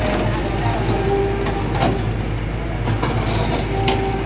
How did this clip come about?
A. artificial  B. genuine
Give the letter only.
B